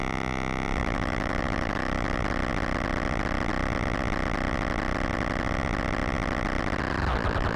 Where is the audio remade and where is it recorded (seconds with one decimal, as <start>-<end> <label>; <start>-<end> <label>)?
0.0-0.8 recorded; 0.8-2.2 remade; 2.2-7.6 recorded

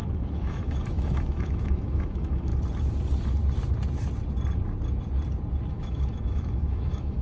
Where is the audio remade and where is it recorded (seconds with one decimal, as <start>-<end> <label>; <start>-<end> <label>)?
0.0-2.5 remade; 2.5-5.7 recorded; 5.7-7.2 remade

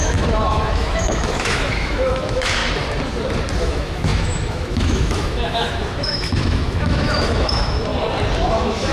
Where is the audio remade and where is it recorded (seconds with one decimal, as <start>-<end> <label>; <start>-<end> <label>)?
0.0-2.6 remade; 2.6-3.6 recorded; 3.6-7.9 remade; 7.9-8.5 recorded; 8.5-8.9 remade

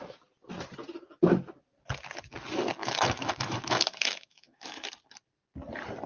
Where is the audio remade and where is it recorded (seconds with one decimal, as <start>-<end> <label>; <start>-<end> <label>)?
0.0-2.8 recorded; 2.8-4.9 remade; 4.9-6.1 recorded

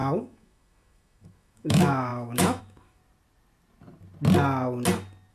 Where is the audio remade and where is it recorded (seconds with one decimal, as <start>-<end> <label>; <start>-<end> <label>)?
0.0-3.0 remade; 3.0-5.3 recorded

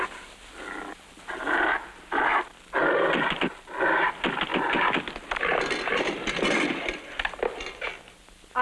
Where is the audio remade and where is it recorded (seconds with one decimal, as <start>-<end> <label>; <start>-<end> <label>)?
0.0-8.6 recorded